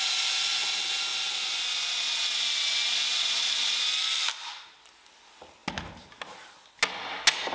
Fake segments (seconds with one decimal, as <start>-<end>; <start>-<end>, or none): none